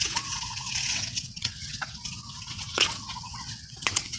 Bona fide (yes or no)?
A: no